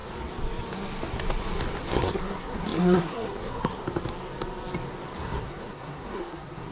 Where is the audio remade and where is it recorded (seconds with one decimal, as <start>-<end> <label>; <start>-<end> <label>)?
0.0-1.8 recorded; 1.8-3.8 remade; 3.8-5.2 recorded; 5.2-6.7 remade